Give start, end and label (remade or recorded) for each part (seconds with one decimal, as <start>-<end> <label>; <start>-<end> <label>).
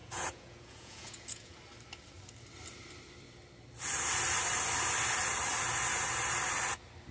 0.0-1.6 remade; 1.6-7.1 recorded